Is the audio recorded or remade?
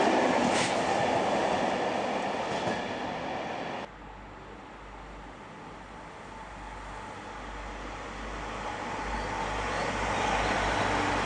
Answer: recorded